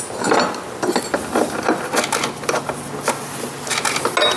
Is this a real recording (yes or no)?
yes